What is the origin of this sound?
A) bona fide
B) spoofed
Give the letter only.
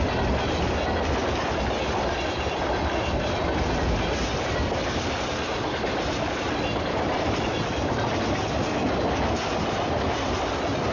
A